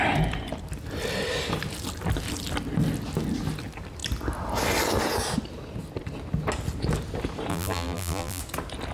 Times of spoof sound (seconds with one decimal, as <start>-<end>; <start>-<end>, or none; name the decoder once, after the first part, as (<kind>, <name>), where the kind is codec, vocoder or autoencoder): 7.5-8.4 (vocoder, BigVGAN v2)